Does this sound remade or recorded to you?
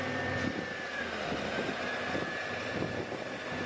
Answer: recorded